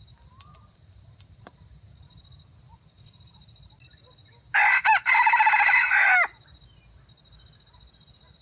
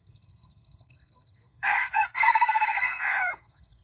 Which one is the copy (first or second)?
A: second